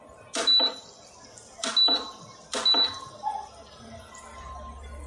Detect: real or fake real